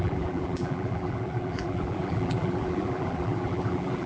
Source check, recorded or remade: remade